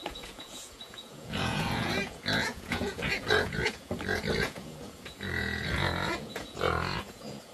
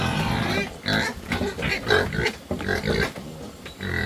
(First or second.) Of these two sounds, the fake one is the first